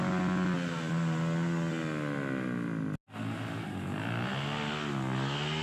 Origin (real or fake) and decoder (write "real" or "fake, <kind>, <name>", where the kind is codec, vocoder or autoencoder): real